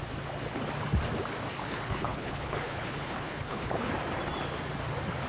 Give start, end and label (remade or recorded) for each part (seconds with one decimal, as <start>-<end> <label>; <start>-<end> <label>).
0.0-1.6 recorded; 1.6-3.9 remade; 3.9-5.3 recorded